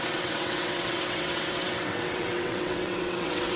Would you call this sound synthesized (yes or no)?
yes